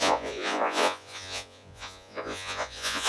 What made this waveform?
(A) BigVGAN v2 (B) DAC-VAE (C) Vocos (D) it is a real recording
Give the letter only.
C